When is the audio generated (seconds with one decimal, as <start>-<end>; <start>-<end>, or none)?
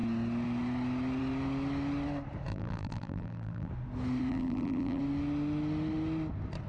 2.5-3.7; 4.3-5.0